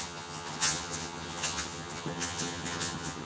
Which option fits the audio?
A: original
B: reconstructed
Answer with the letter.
B